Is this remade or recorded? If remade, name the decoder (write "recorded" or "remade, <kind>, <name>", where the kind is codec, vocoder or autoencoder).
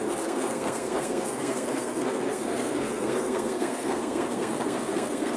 remade, codec, SNAC